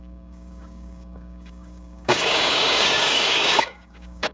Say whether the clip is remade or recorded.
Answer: remade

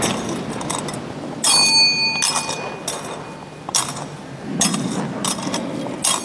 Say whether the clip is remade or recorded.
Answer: recorded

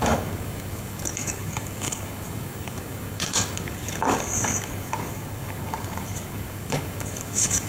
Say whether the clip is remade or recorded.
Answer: remade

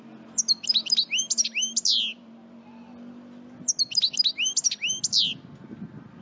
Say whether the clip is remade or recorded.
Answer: recorded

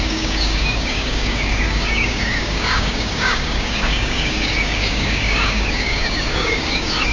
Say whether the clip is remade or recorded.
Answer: remade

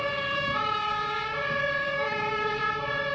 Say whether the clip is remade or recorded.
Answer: remade